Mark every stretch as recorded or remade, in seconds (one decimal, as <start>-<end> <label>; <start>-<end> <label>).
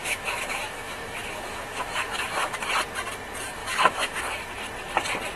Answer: 0.0-2.7 remade; 2.7-3.6 recorded; 3.6-4.2 remade; 4.2-5.4 recorded